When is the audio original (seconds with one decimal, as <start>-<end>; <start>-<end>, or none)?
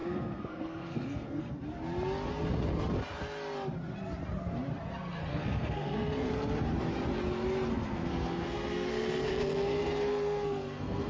1.6-5.3; 6.3-7.7